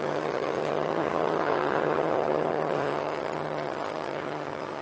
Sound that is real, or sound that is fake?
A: fake